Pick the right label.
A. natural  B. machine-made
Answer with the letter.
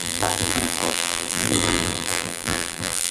B